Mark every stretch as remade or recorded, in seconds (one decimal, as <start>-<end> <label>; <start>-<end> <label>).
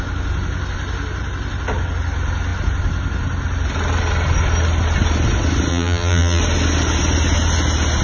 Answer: 0.0-5.7 recorded; 5.7-6.4 remade; 6.4-8.0 recorded